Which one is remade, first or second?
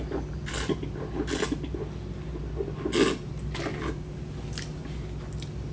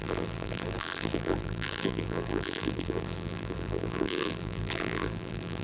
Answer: second